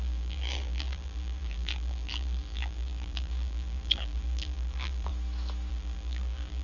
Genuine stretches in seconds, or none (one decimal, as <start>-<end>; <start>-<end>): 5.1-5.7